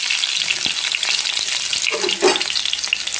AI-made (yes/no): no